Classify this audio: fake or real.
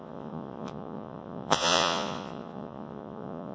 fake